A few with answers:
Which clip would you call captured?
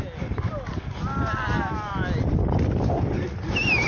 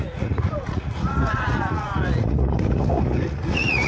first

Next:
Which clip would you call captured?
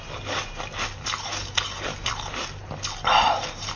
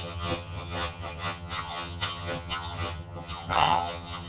first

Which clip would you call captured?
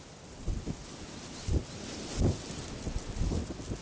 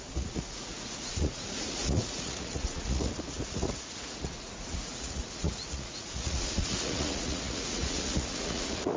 first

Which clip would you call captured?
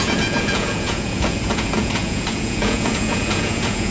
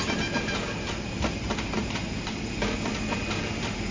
second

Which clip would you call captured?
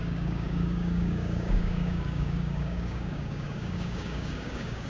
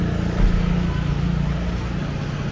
second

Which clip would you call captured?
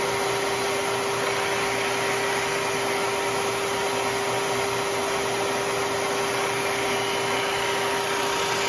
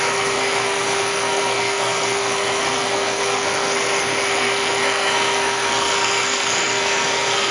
first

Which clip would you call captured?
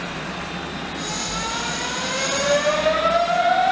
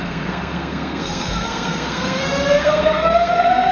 first